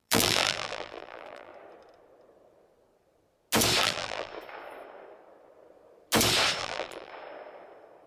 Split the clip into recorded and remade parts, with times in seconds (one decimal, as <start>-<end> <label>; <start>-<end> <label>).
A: 0.0-1.5 remade; 1.5-3.8 recorded; 3.8-4.3 remade; 4.3-6.6 recorded; 6.6-7.1 remade; 7.1-8.1 recorded

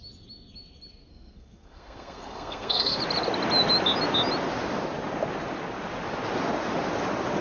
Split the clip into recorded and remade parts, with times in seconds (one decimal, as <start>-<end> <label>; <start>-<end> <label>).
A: 0.0-1.1 recorded; 1.1-3.0 remade; 3.0-7.4 recorded

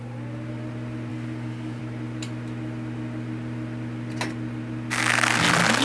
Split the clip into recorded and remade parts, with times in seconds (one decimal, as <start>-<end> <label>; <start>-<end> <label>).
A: 0.0-1.1 recorded; 1.1-1.8 remade; 1.8-5.8 recorded

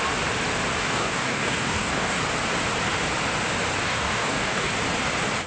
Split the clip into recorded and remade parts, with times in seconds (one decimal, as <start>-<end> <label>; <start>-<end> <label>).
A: 0.0-0.8 recorded; 0.8-2.2 remade; 2.2-3.8 recorded; 3.8-4.7 remade; 4.7-5.5 recorded

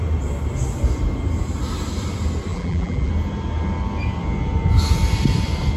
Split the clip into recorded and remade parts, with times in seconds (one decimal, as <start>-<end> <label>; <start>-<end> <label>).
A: 0.0-2.5 recorded; 2.5-3.1 remade; 3.1-5.8 recorded

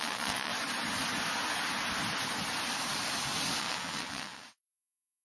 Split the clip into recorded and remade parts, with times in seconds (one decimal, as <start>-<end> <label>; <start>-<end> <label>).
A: 0.0-0.5 remade; 0.5-3.6 recorded; 3.6-5.2 remade